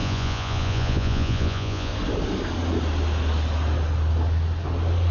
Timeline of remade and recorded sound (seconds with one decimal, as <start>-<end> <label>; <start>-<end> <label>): 0.0-1.9 remade; 1.9-5.1 recorded